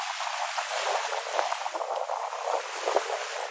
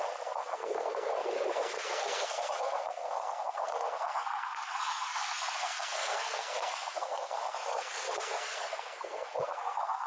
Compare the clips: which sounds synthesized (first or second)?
second